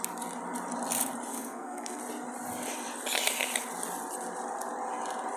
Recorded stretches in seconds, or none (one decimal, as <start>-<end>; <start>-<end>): 0.0-1.3; 2.0-5.4